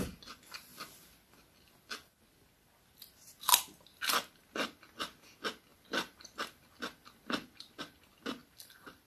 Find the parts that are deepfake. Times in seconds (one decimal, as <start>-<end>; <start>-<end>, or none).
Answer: 5.7-7.3; 8.4-9.1